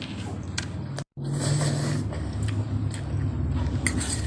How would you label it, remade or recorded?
recorded